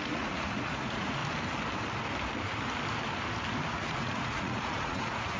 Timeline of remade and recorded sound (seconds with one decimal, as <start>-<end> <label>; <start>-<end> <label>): 0.0-1.2 remade; 1.2-3.7 recorded; 3.7-5.4 remade